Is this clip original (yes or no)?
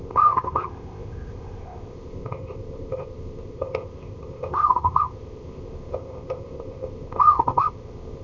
no